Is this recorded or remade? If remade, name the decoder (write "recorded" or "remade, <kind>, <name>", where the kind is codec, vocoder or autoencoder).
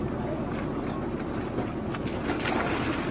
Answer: recorded